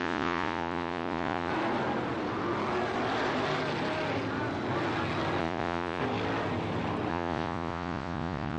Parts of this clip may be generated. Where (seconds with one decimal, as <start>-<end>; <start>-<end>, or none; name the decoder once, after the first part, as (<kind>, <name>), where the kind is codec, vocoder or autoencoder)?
0.0-1.5 (vocoder, Vocos); 5.4-6.0; 7.1-8.6